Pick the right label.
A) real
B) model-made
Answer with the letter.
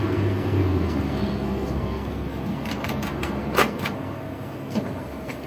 B